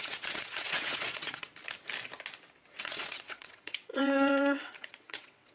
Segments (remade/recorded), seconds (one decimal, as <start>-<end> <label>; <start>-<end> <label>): 0.0-1.5 remade; 1.5-2.8 recorded; 2.8-5.5 remade